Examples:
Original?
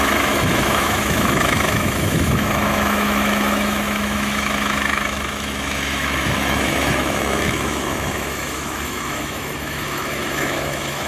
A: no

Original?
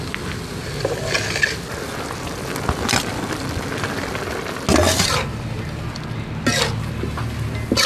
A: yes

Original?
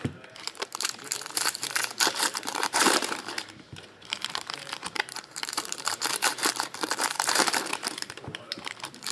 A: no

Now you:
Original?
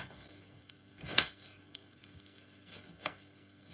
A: no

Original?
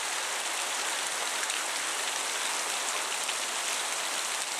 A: yes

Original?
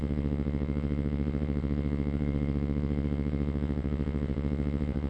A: no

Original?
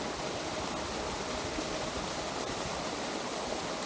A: yes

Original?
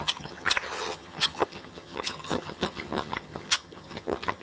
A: no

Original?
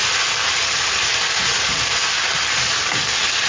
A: yes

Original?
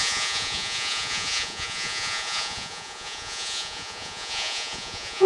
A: no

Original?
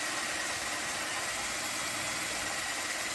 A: yes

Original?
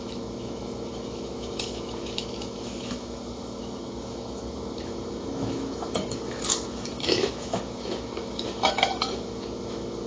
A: no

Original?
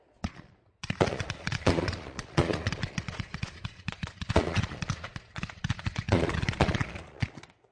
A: no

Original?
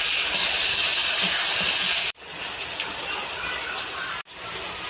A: no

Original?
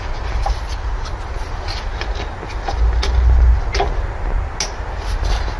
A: yes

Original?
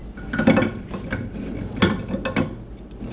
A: yes